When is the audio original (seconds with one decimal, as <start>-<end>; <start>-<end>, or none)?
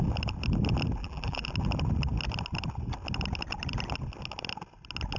0.0-1.0; 1.5-5.2